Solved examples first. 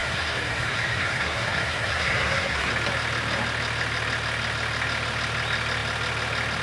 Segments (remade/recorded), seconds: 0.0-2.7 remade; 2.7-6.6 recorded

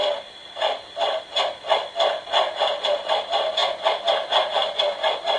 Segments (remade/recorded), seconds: 0.0-5.4 recorded

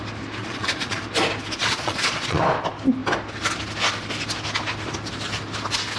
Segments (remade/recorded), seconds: 0.0-0.4 recorded; 0.4-1.0 remade; 1.0-1.6 recorded; 1.6-2.4 remade; 2.4-6.0 recorded

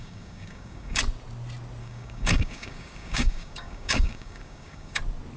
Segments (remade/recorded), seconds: 0.0-1.0 remade; 1.0-1.8 recorded; 1.8-5.0 remade; 5.0-5.4 recorded

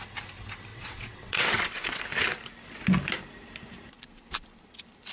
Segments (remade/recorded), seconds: 0.0-0.7 recorded; 0.7-2.0 remade; 2.0-5.1 recorded

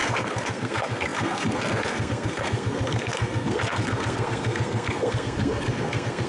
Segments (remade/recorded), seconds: 0.0-6.3 remade

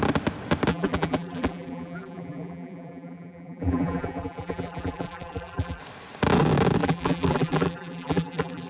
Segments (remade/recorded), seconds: 0.0-0.7 recorded; 0.7-5.8 remade; 5.8-6.8 recorded; 6.8-8.7 remade